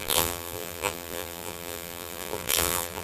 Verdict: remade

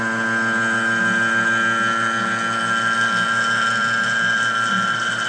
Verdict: recorded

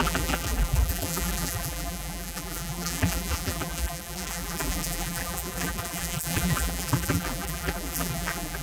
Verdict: remade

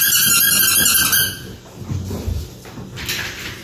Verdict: recorded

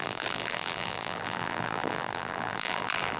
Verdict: remade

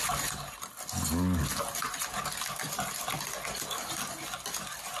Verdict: recorded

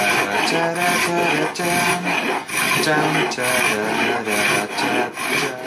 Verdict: recorded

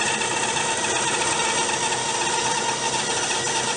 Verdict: recorded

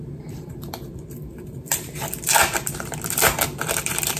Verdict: remade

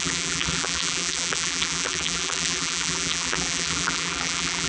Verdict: remade